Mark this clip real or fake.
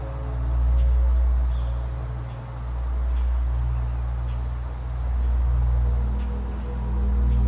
real